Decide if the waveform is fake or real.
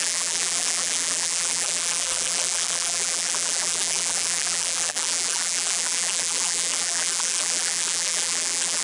fake